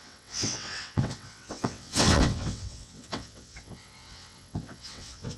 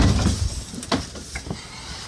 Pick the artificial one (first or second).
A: first